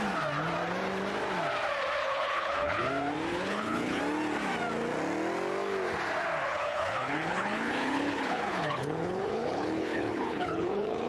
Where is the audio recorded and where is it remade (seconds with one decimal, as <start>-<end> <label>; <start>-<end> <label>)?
0.0-2.0 recorded; 2.0-2.8 remade; 2.8-3.3 recorded; 3.3-4.0 remade; 4.0-6.5 recorded; 6.5-11.1 remade